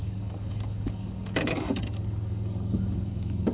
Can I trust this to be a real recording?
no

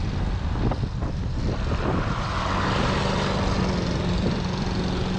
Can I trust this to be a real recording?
yes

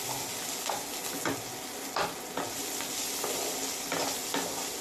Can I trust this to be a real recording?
yes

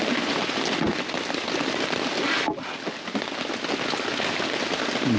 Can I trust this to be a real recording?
yes